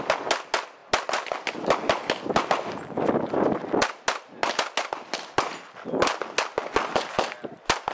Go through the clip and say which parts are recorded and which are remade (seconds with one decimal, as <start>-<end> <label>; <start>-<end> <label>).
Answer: 0.0-7.9 recorded